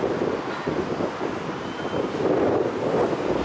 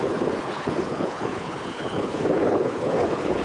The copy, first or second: second